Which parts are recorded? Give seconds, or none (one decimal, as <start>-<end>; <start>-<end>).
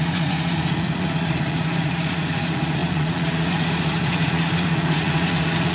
none